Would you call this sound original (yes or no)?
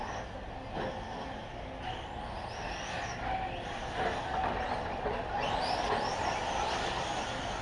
yes